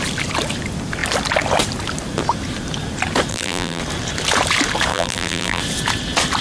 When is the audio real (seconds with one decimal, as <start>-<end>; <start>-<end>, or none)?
0.0-3.3; 3.8-4.9; 5.6-6.4

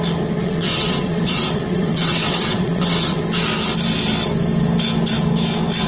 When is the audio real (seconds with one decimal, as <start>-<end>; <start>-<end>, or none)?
0.0-0.4; 3.2-5.9

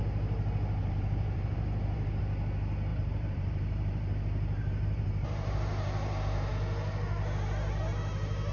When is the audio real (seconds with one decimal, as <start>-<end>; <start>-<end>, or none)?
0.0-0.8; 2.2-2.9; 6.5-8.5

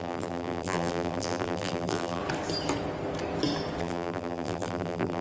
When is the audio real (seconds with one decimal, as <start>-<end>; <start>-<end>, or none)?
2.2-3.8

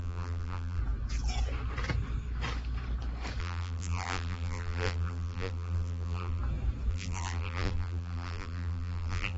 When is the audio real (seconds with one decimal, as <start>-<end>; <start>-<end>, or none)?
0.8-3.4; 6.4-6.9

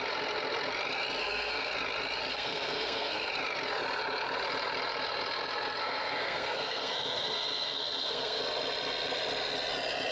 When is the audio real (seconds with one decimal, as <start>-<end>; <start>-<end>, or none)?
0.0-1.2; 1.7-2.3; 3.3-5.8; 8.4-10.1

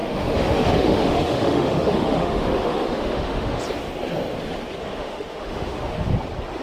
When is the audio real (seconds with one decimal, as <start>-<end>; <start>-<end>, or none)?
3.6-4.8; 6.1-6.6